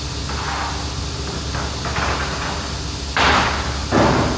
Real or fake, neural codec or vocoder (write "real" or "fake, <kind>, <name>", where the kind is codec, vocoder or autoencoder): real